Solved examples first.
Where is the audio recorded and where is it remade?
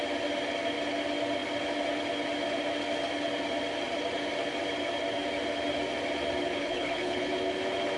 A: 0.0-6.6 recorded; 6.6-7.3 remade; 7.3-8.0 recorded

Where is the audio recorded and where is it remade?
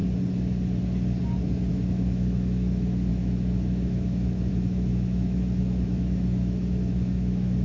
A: 0.0-1.7 recorded; 1.7-7.6 remade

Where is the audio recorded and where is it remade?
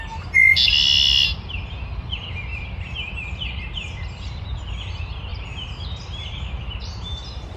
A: 0.0-2.5 recorded; 2.5-4.7 remade; 4.7-5.3 recorded; 5.3-7.6 remade